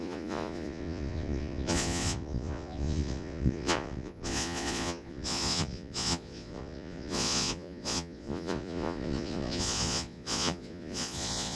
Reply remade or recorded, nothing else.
remade